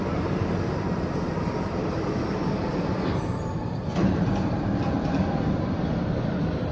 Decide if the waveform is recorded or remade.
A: remade